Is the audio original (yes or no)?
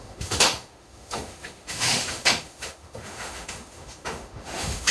no